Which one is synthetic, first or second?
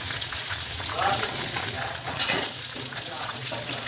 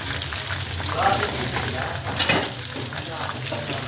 first